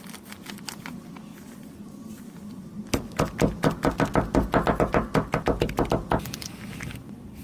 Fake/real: real